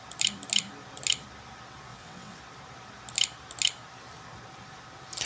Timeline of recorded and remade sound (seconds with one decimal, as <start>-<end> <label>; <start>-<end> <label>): 0.0-1.9 recorded; 1.9-2.4 remade; 2.4-5.3 recorded